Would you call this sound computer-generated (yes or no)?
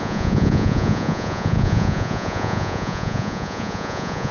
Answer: yes